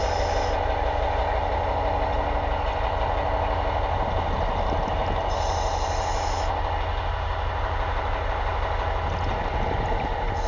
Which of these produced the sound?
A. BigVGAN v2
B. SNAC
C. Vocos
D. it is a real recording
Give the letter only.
D